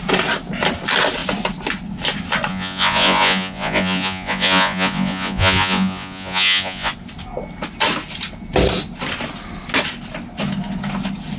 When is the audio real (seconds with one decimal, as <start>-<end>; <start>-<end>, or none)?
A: 0.0-2.5; 6.9-11.4